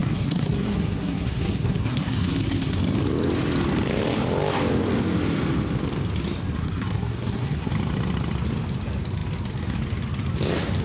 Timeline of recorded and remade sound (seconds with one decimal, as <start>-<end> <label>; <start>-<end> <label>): 0.0-2.8 remade; 2.8-6.6 recorded; 6.6-7.7 remade; 7.7-10.8 recorded